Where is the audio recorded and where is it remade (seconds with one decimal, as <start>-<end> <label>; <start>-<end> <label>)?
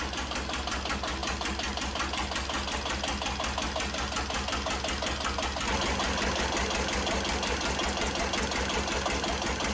0.0-9.7 recorded